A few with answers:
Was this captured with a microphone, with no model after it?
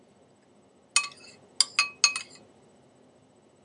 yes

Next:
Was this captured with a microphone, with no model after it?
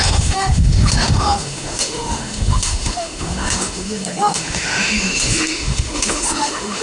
no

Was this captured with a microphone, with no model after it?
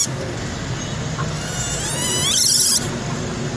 yes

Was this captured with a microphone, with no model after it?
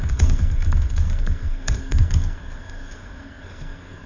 no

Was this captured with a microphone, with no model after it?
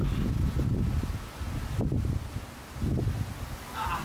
yes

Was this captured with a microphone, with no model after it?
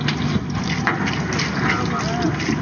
yes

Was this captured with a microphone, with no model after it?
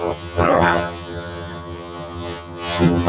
no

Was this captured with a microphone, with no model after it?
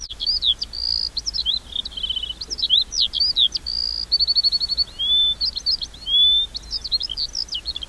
yes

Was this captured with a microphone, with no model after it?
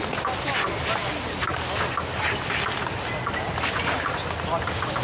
yes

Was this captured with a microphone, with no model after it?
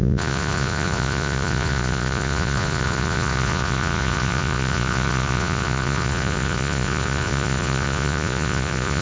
no